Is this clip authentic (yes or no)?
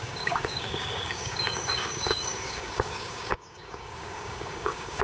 no